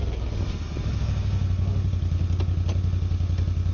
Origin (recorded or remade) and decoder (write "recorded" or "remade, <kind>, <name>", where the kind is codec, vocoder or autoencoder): recorded